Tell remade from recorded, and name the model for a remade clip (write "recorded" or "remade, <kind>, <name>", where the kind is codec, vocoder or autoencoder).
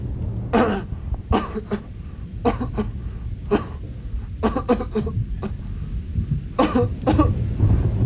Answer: recorded